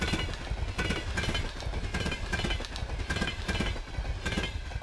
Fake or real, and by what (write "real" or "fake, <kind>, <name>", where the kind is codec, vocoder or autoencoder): real